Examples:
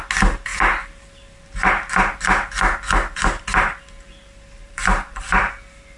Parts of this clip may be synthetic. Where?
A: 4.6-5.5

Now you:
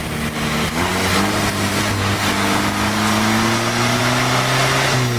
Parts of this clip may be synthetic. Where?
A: none

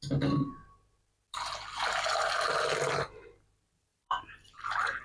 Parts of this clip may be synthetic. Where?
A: 3.9-5.0

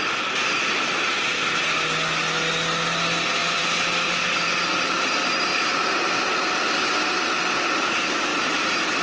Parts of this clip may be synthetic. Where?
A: 3.4-5.1; 5.5-6.2

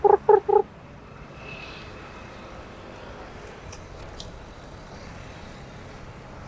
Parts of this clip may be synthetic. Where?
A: none

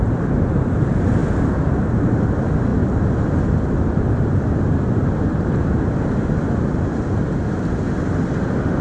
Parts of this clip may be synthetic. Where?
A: 0.0-1.2; 2.2-2.7; 3.5-8.8

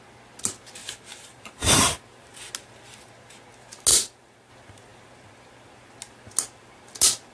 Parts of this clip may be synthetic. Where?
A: 0.8-2.0; 3.9-4.5

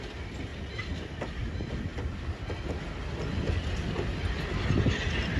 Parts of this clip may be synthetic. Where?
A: none